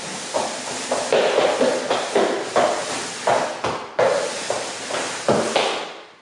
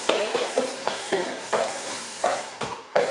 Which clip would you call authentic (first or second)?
first